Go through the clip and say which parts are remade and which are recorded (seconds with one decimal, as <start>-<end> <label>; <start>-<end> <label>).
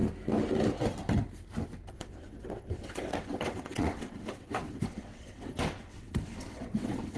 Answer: 0.0-1.9 recorded; 1.9-7.2 remade